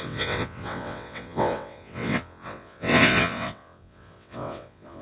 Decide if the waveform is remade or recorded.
remade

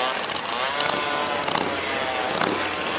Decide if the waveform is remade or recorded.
recorded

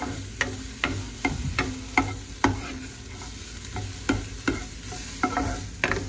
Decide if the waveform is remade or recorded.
recorded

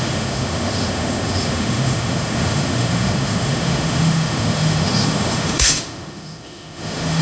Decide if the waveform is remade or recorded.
remade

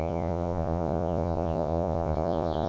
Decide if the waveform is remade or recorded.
remade